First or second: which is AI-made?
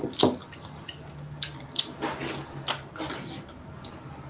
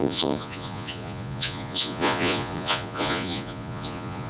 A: second